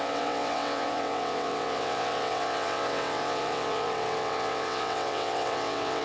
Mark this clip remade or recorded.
remade